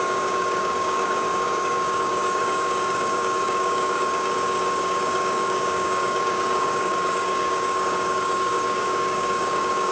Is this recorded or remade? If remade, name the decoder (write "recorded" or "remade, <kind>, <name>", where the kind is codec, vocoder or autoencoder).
remade, codec, DAC